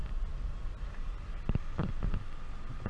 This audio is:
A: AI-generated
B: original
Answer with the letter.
B